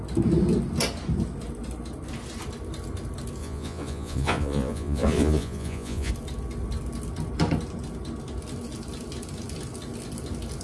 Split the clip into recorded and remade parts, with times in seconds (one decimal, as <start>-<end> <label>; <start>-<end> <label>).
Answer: 0.0-3.4 recorded; 3.4-6.1 remade; 6.1-10.6 recorded